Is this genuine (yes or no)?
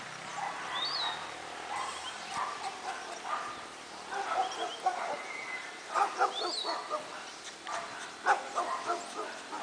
yes